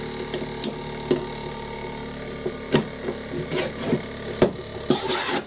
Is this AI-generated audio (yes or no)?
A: no